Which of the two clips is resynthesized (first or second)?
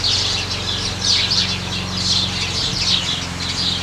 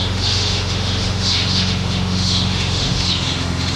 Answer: second